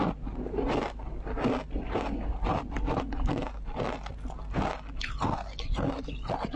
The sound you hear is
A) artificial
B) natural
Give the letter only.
B